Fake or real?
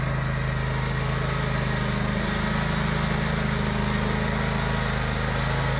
real